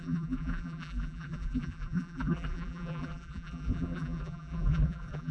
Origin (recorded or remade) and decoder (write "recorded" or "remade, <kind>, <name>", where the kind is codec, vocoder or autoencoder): remade, vocoder, BigVGAN v2